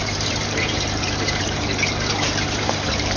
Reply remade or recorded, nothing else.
remade